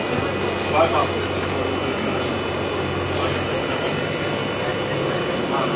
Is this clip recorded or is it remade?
recorded